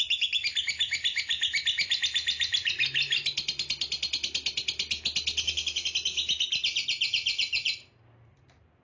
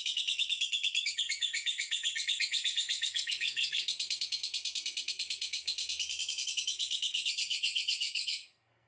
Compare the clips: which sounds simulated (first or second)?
second